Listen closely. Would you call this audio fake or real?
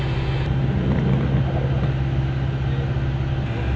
real